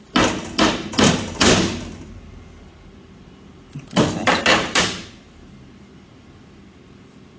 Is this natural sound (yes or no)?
yes